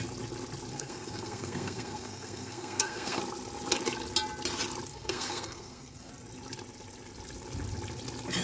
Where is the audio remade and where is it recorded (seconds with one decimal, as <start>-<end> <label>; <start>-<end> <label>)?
0.0-0.7 recorded; 0.7-3.2 remade; 3.2-4.9 recorded; 4.9-6.1 remade; 6.1-8.4 recorded